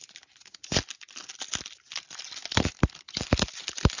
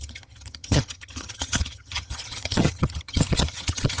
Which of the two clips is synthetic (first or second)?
second